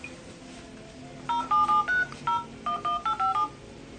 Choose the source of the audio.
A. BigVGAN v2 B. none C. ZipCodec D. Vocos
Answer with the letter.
B